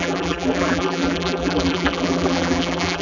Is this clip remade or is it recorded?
remade